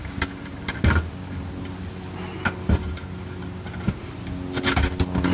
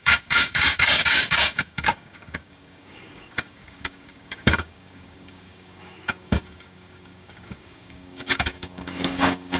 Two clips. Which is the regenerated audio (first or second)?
second